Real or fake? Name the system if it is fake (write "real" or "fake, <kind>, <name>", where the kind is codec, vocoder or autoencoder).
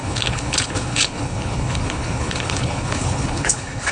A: fake, codec, HILCodec